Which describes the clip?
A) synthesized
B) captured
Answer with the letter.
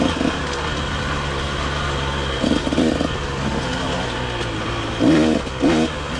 B